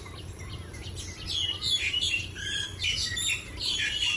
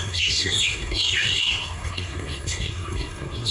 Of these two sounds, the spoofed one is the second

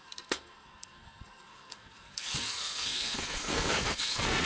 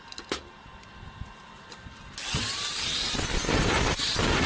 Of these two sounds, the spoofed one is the first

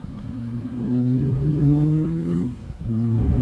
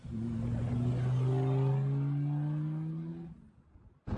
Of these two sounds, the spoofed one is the first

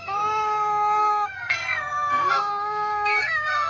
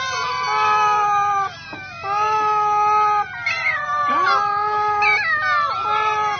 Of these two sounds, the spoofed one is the first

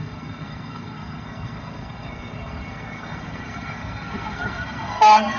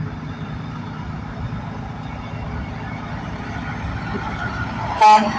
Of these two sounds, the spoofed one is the first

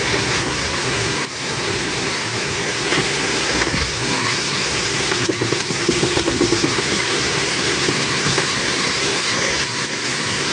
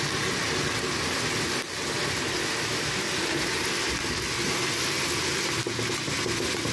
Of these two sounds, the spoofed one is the first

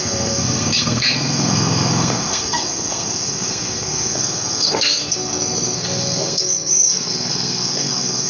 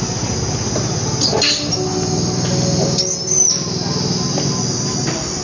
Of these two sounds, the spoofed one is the first